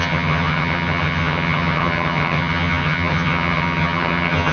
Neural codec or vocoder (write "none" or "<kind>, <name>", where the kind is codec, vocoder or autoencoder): vocoder, HiFi-GAN